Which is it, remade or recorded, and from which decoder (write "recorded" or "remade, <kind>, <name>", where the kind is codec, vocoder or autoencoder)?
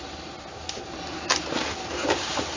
recorded